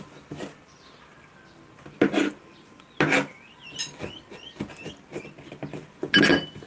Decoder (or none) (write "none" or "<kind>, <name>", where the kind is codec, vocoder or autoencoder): none